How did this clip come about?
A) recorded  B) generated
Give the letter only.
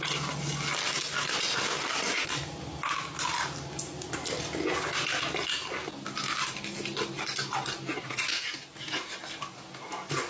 A